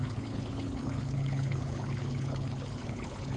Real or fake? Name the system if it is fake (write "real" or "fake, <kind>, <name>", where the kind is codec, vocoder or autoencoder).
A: fake, codec, HILCodec